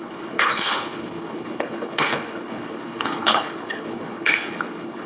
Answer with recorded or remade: remade